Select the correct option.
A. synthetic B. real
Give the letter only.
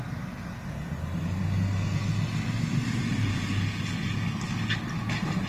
B